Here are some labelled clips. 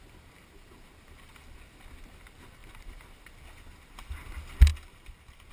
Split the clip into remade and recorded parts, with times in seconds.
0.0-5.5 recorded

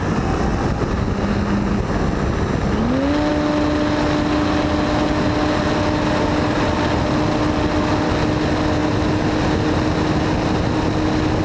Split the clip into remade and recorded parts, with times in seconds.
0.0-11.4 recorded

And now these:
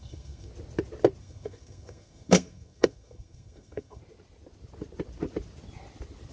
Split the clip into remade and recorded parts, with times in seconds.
0.0-0.5 remade; 0.5-1.2 recorded; 1.2-4.0 remade; 4.0-6.3 recorded